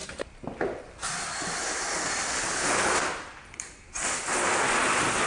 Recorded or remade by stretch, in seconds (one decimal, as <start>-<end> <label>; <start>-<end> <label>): 0.0-2.3 recorded; 2.3-2.9 remade; 2.9-5.3 recorded